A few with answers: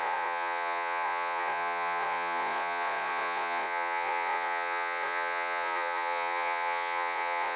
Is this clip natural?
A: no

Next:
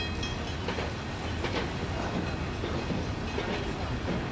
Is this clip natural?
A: yes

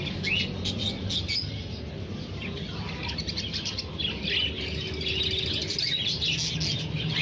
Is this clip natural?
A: yes